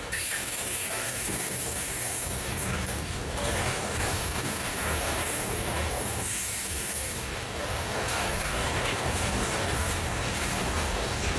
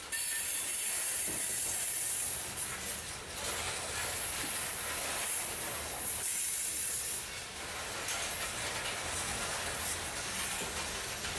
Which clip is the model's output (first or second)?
first